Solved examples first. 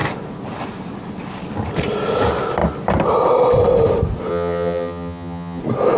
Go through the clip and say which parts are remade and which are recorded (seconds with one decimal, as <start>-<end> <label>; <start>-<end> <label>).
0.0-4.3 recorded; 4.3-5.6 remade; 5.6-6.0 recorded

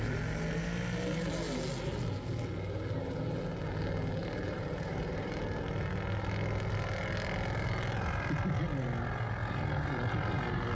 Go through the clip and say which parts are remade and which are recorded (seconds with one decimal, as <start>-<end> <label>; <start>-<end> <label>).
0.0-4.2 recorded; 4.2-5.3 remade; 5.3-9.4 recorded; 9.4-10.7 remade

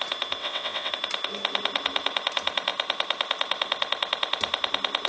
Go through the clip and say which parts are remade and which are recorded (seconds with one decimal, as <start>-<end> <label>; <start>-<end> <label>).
0.0-0.4 recorded; 0.4-0.9 remade; 0.9-5.1 recorded

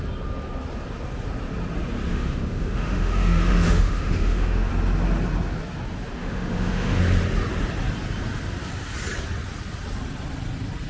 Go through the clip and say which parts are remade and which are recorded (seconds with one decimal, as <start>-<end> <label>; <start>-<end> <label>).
0.0-2.1 recorded; 2.1-4.7 remade; 4.7-6.2 recorded; 6.2-7.0 remade; 7.0-10.9 recorded

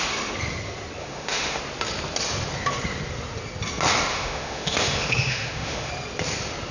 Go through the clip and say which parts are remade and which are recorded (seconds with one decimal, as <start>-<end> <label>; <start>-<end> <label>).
0.0-1.0 recorded; 1.0-1.6 remade; 1.6-4.1 recorded; 4.1-5.9 remade; 5.9-6.7 recorded

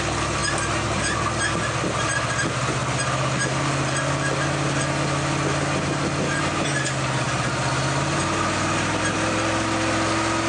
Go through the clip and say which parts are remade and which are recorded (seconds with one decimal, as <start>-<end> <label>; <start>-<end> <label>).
0.0-10.5 recorded

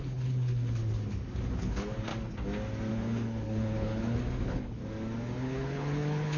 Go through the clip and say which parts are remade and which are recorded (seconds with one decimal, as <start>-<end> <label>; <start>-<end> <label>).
0.0-0.8 remade; 0.8-1.6 recorded; 1.6-2.1 remade; 2.1-2.9 recorded; 2.9-4.8 remade; 4.8-5.4 recorded; 5.4-6.4 remade

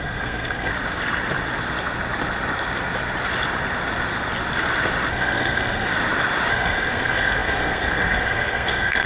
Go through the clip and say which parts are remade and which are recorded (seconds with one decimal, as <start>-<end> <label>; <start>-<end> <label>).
0.0-0.7 remade; 0.7-5.1 recorded; 5.1-5.9 remade; 5.9-6.5 recorded; 6.5-9.1 remade